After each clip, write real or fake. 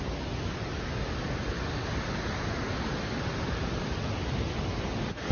real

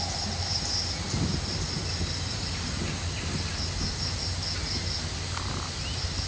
real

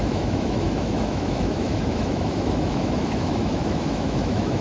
fake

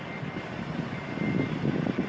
real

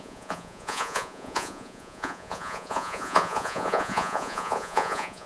fake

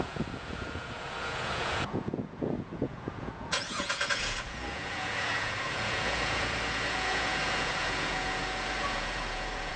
fake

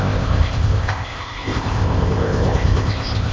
fake